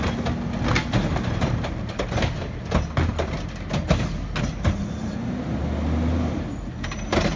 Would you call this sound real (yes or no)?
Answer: yes